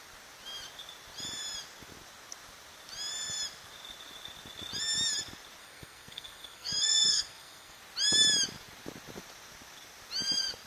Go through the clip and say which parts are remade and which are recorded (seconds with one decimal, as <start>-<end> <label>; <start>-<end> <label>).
0.0-5.6 recorded; 5.6-7.8 remade; 7.8-10.7 recorded